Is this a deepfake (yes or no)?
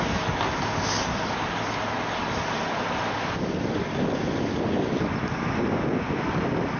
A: no